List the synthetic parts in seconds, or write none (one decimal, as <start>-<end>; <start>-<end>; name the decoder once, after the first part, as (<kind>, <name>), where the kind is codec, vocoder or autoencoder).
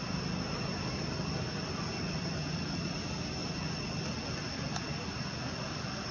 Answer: none